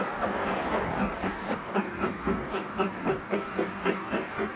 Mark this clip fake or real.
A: fake